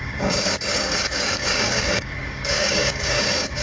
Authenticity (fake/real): fake